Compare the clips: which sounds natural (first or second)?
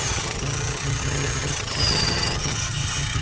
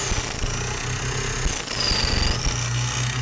second